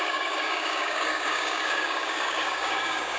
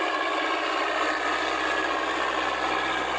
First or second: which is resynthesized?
first